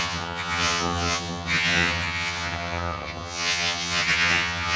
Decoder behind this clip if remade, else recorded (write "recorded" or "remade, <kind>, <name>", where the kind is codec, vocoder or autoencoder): remade, vocoder, HiFi-GAN